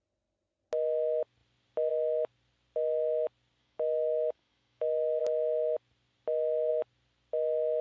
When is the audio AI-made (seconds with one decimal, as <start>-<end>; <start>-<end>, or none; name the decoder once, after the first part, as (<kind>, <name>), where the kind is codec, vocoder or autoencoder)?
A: 3.6-5.2 (autoencoder, DAC-VAE)